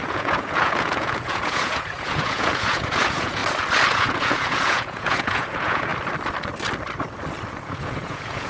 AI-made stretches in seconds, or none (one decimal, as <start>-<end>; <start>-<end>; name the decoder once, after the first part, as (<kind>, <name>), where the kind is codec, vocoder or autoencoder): 0.0-3.4 (vocoder, Vocos); 3.9-5.9; 7.6-8.5